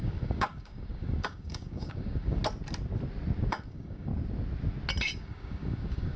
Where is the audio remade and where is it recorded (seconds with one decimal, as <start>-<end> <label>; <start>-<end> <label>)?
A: 0.0-2.4 remade; 2.4-3.5 recorded; 3.5-4.1 remade; 4.1-5.0 recorded; 5.0-6.2 remade